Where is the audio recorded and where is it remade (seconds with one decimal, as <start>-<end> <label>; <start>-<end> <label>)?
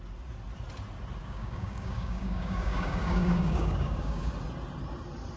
0.0-1.2 recorded; 1.2-4.3 remade; 4.3-5.4 recorded